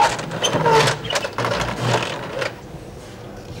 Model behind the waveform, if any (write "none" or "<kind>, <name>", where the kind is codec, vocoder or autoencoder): none